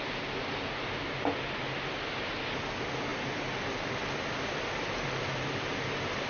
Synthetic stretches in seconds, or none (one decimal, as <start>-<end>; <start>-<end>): none